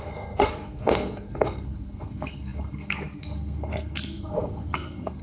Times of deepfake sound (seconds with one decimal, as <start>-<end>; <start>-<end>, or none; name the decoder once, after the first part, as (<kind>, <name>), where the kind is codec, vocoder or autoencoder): 0.0-5.2 (codec, SNAC)